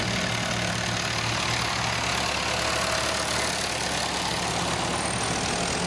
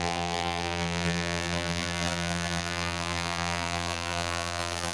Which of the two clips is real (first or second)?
first